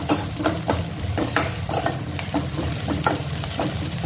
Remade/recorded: remade